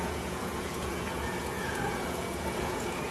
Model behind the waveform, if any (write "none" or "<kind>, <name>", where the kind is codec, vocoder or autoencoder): vocoder, Vocos